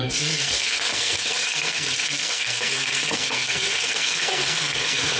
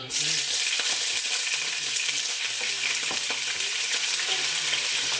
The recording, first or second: second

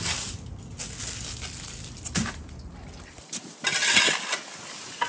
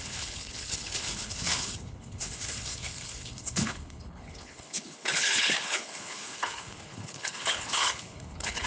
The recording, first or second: first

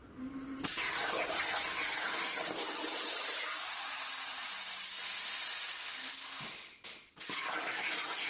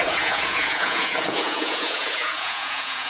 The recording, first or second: first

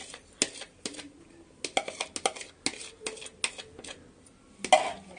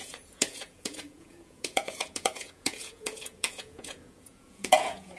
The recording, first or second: first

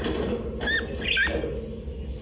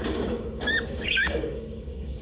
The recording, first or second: first